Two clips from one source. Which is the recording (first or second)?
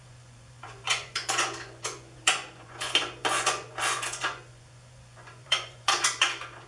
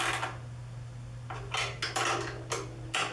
second